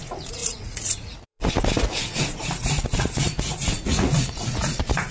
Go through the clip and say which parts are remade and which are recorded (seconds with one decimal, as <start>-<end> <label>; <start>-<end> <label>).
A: 0.0-5.1 remade